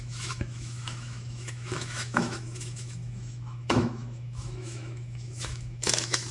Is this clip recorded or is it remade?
remade